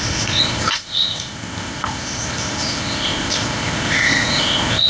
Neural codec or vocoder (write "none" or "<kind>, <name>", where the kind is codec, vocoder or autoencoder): codec, ZipCodec